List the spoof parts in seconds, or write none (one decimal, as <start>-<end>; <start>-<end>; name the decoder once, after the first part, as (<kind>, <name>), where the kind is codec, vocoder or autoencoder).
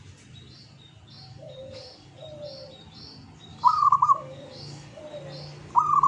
1.3-2.1 (codec, DAC); 3.5-5.0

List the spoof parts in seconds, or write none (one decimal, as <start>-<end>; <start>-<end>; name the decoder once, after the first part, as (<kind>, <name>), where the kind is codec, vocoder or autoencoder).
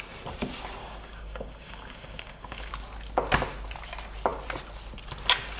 0.8-2.7 (codec, DAC)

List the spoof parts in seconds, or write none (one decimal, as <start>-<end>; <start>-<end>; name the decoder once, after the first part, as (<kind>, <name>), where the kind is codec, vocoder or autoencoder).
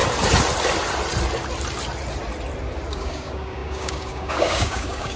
2.9-5.2 (codec, DAC)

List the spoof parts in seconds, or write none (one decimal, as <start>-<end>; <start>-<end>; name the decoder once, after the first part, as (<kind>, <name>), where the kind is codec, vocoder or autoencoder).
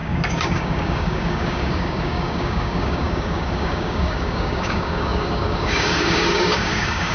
0.0-7.1 (codec, DAC)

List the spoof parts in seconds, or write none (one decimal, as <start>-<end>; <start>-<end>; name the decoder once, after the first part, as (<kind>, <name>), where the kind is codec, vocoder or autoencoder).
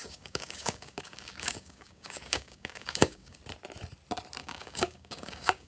0.0-3.4 (codec, DAC); 4.4-5.7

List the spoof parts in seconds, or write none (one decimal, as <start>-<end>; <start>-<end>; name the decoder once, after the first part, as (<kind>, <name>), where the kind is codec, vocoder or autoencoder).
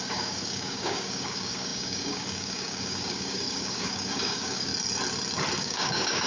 0.0-4.7 (codec, DAC); 5.6-6.3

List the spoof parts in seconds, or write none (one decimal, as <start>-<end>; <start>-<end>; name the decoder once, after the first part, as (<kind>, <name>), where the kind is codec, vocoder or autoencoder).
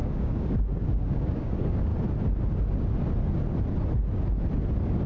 0.0-1.9 (codec, DAC)